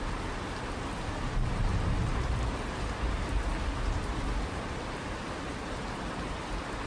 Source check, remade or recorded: recorded